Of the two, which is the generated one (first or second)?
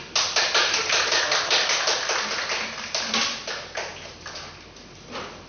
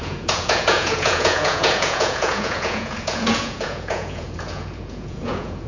second